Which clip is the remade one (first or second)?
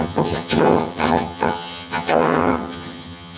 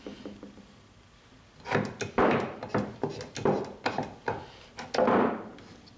first